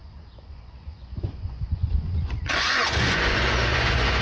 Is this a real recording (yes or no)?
no